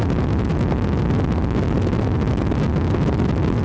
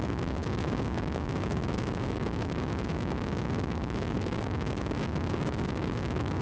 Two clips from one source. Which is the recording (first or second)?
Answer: first